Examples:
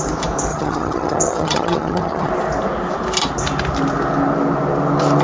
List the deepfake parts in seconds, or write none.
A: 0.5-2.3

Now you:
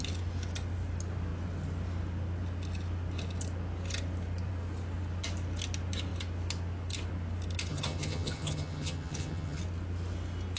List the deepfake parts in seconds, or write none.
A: 7.7-9.6

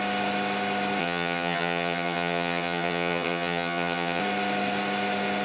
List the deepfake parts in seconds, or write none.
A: 1.0-4.2

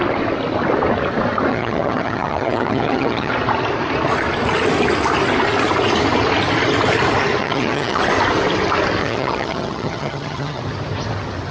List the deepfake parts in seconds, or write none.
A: 1.5-3.3; 7.4-8.0; 9.0-10.6

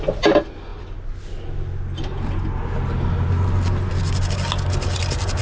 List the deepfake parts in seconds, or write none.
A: none